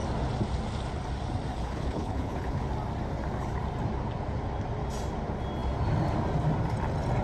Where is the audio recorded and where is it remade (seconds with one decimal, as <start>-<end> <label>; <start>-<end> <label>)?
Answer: 0.0-1.5 recorded; 1.5-2.7 remade; 2.7-7.2 recorded